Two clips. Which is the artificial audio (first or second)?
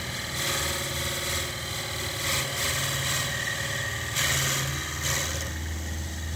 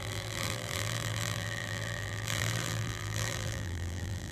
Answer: second